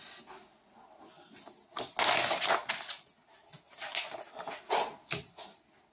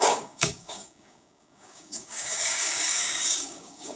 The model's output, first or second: second